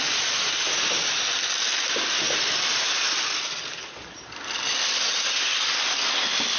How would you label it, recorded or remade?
recorded